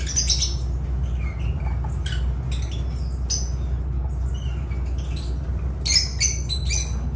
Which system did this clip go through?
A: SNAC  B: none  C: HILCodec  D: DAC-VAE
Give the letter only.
B